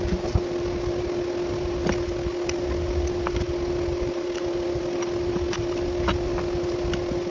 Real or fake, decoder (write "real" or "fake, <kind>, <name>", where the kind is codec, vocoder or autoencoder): real